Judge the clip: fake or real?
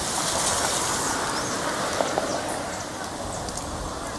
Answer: real